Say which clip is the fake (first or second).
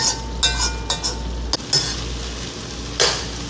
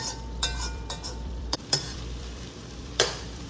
second